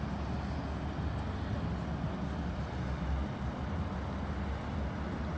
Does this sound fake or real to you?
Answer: real